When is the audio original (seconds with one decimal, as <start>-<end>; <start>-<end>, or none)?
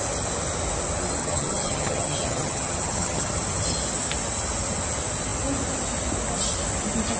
0.0-1.2; 3.3-7.2